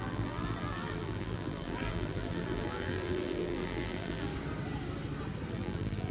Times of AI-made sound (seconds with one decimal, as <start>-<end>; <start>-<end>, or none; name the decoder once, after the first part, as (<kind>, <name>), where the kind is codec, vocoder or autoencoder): 0.0-4.3 (vocoder, BigVGAN v2); 5.5-6.1